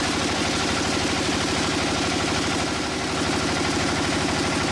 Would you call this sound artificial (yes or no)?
no